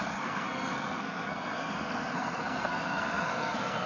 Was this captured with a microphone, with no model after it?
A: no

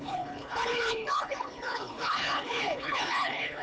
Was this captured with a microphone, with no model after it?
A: no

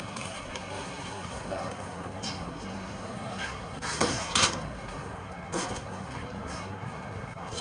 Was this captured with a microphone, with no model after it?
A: no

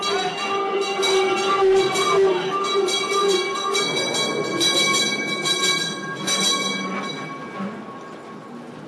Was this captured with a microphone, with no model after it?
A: yes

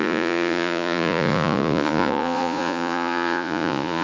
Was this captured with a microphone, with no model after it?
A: no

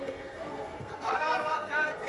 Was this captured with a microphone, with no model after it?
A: no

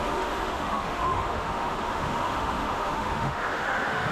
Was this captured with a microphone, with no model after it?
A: no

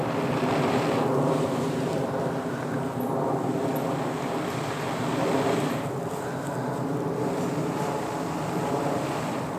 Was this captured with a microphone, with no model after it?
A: yes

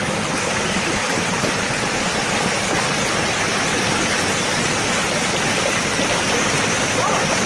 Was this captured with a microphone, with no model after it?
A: yes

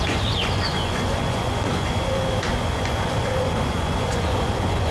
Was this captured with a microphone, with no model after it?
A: no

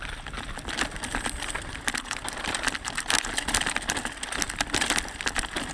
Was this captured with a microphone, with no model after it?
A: yes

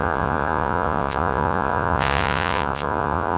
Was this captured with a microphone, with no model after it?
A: no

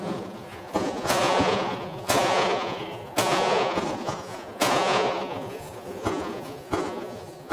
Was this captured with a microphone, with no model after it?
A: no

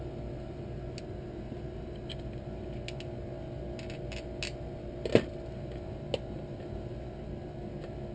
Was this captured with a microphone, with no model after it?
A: yes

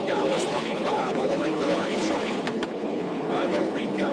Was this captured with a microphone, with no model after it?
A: no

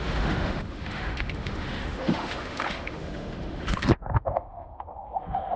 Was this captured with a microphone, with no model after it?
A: no